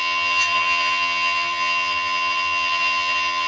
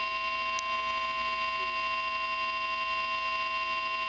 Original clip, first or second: second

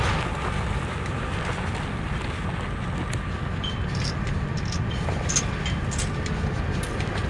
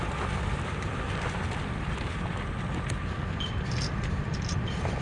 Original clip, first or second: first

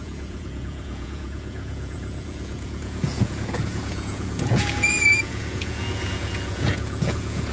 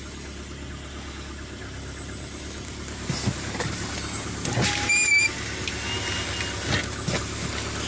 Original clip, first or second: second